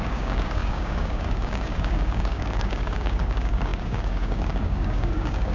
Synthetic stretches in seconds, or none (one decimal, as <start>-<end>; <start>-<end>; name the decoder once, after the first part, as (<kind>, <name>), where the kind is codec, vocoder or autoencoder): 0.0-5.5 (codec, DAC)